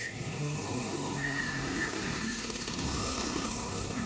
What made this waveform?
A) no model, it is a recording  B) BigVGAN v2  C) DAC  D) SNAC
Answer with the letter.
D